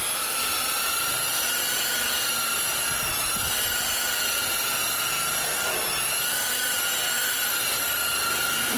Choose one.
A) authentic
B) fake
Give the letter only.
A